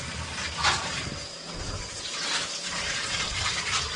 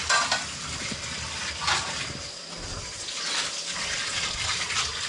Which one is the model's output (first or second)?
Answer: second